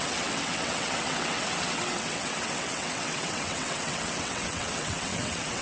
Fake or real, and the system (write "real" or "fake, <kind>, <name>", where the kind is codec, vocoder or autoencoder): fake, vocoder, WaveNeXt